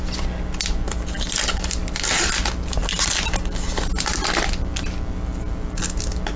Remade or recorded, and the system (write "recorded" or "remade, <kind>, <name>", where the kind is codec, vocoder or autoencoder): recorded